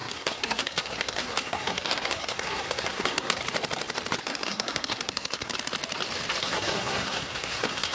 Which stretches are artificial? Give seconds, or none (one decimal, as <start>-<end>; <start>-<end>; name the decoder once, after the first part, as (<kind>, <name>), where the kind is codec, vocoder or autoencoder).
0.0-3.4 (codec, SNAC); 4.2-5.5; 6.4-7.9